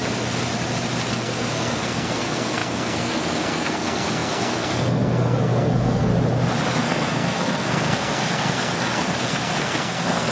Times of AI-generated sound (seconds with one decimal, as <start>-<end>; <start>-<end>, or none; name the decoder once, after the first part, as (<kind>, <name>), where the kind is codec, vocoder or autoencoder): 1.1-6.1 (codec, SNAC); 6.7-10.3